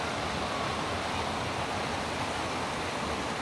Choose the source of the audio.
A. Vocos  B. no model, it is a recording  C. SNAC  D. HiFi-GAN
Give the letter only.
B